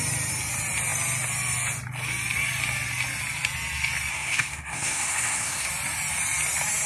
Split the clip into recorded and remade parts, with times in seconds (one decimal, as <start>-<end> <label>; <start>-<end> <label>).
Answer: 0.0-4.1 recorded; 4.1-5.7 remade; 5.7-6.9 recorded